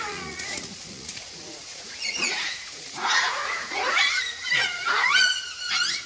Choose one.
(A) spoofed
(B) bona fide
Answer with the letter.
A